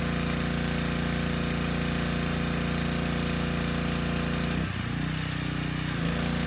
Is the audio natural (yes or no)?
yes